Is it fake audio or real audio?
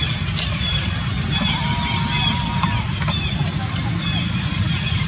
real